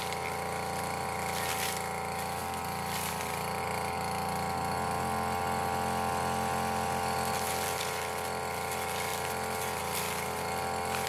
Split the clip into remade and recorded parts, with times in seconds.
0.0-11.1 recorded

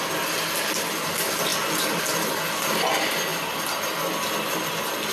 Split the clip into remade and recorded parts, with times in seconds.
0.0-1.5 recorded; 1.5-2.0 remade; 2.0-3.3 recorded; 3.3-3.8 remade; 3.8-5.1 recorded

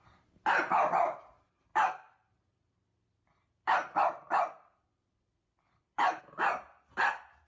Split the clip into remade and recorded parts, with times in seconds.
0.0-1.7 recorded; 1.7-6.2 remade; 6.2-7.5 recorded

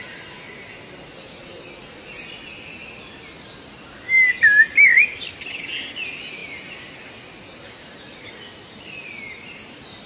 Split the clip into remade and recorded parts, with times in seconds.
0.0-5.1 recorded; 5.1-5.8 remade; 5.8-6.4 recorded; 6.4-8.3 remade; 8.3-10.1 recorded

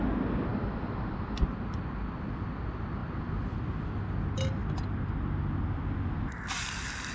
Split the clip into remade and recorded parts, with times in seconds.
0.0-0.5 recorded; 0.5-1.8 remade; 1.8-3.0 recorded; 3.0-3.9 remade; 3.9-7.1 recorded

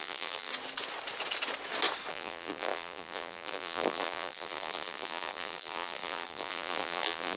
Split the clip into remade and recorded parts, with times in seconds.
0.0-0.5 remade; 0.5-2.1 recorded; 2.1-7.4 remade

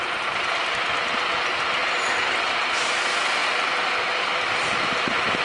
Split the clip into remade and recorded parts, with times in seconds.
0.0-3.4 recorded; 3.4-5.4 remade